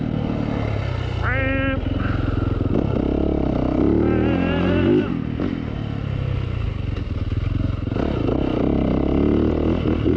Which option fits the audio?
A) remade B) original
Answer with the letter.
B